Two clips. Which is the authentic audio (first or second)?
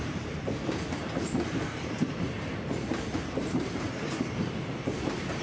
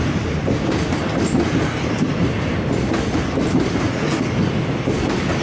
second